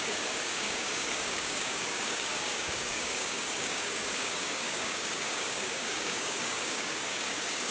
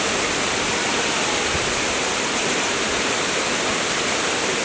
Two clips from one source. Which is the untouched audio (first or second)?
second